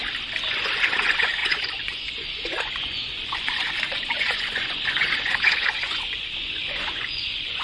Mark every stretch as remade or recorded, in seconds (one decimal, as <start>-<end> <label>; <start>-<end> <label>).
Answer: 0.0-0.5 recorded; 0.5-7.6 remade